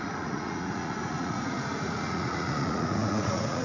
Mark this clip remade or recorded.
remade